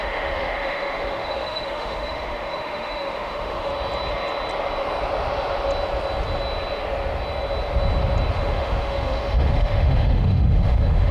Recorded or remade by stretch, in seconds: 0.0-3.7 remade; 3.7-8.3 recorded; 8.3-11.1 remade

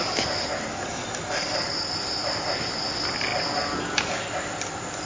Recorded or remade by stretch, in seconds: 0.0-5.1 recorded

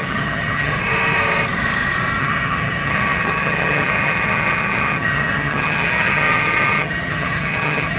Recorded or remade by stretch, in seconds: 0.0-0.7 remade; 0.7-2.2 recorded; 2.2-8.0 remade

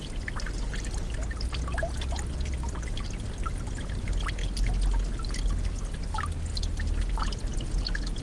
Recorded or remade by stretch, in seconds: 0.0-6.5 recorded; 6.5-7.2 remade; 7.2-8.2 recorded

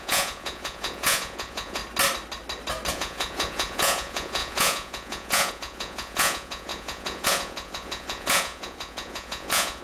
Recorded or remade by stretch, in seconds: 0.0-1.8 remade; 1.8-2.9 recorded; 2.9-9.8 remade

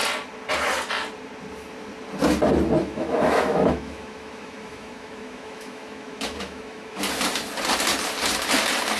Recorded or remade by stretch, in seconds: 0.0-2.8 recorded; 2.8-7.0 remade; 7.0-9.0 recorded